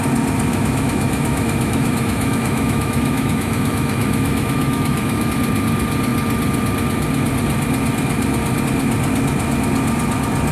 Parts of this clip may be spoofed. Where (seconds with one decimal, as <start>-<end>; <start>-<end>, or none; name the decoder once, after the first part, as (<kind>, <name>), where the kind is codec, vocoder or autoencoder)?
0.5-5.3 (autoencoder, DAC-VAE)